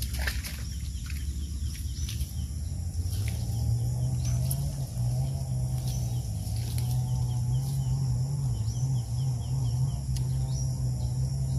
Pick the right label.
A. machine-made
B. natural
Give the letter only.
B